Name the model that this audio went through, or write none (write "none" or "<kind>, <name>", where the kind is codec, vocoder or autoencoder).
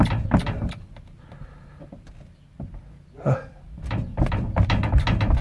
none